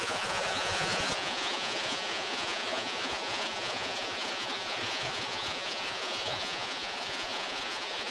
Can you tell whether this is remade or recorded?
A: remade